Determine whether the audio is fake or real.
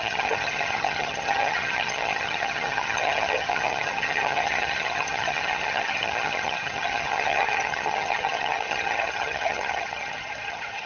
fake